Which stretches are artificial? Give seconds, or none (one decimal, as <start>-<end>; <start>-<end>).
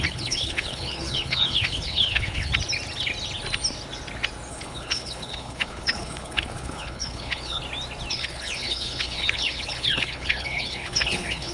0.0-2.5; 4.5-7.6; 8.1-11.5